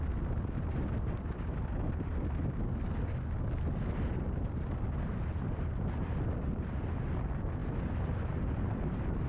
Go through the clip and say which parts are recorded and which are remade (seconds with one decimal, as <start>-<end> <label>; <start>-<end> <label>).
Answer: 0.0-9.3 recorded